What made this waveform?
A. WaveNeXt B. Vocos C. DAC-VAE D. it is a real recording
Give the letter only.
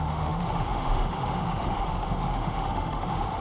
C